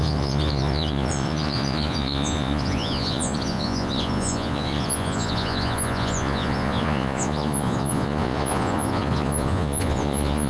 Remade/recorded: remade